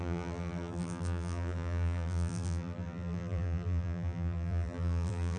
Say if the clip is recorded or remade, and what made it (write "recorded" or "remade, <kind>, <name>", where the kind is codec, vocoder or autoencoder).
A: remade, vocoder, BigVGAN v2